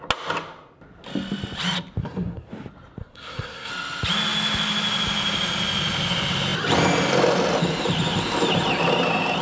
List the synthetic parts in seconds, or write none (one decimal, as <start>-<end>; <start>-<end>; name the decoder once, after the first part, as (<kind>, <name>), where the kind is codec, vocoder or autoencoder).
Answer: 2.0-2.5 (codec, SNAC); 3.0-3.7